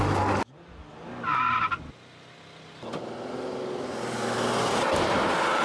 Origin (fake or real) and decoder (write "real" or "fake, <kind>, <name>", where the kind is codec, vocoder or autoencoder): real